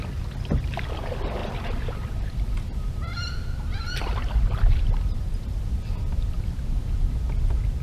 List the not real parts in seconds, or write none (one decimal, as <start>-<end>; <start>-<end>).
1.4-5.5